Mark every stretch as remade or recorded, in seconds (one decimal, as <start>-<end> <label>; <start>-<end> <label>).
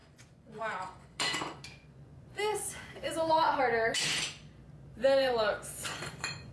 0.0-3.6 remade; 3.6-4.9 recorded; 4.9-6.5 remade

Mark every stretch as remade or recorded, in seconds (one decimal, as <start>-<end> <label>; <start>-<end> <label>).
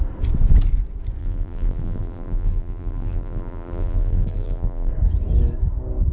0.0-1.2 recorded; 1.2-4.9 remade; 4.9-6.1 recorded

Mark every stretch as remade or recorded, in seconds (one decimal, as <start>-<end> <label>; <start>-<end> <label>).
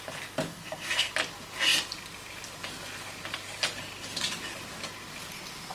0.0-0.5 recorded; 0.5-1.1 remade; 1.1-5.7 recorded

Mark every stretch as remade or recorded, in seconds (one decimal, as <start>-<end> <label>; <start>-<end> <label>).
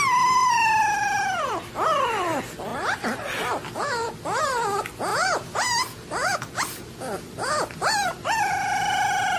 0.0-0.4 recorded; 0.4-1.5 remade; 1.5-5.1 recorded; 5.1-8.9 remade; 8.9-9.4 recorded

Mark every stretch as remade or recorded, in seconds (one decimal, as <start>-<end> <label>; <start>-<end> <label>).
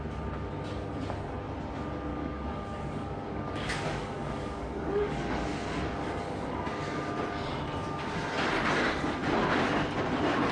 0.0-2.1 recorded; 2.1-7.0 remade; 7.0-10.5 recorded